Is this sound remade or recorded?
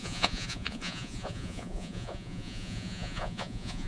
remade